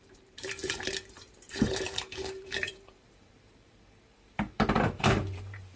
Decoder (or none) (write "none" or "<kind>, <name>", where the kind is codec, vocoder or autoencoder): vocoder, BigVGAN v2